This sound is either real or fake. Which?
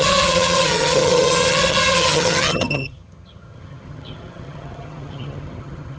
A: fake